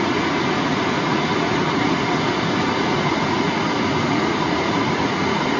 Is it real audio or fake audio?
fake